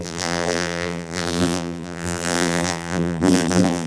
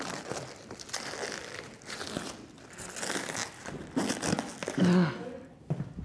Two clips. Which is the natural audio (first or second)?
second